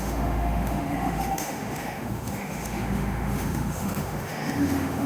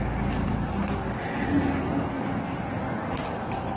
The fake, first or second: first